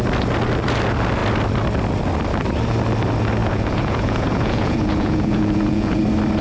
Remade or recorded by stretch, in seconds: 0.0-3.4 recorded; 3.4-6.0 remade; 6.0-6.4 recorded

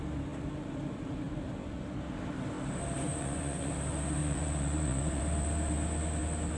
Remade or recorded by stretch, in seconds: 0.0-3.1 recorded; 3.1-3.7 remade; 3.7-4.2 recorded; 4.2-5.2 remade; 5.2-6.6 recorded

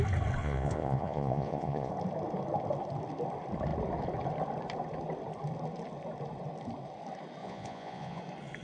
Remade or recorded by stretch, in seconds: 0.0-0.4 recorded; 0.4-1.9 remade; 1.9-7.4 recorded; 7.4-8.2 remade; 8.2-8.6 recorded

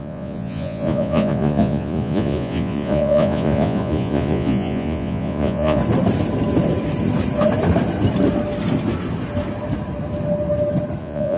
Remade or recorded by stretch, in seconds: 0.0-5.8 remade; 5.8-11.0 recorded; 11.0-11.4 remade